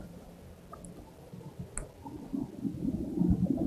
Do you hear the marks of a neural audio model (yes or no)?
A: no